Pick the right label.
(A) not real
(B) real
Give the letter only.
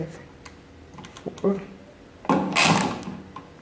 B